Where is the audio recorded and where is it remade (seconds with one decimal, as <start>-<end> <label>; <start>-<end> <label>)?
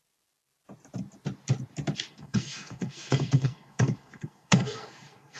0.0-2.1 recorded; 2.1-5.4 remade